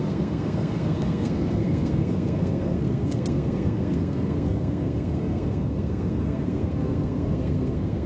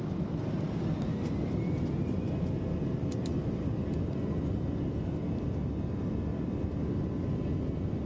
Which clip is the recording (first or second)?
second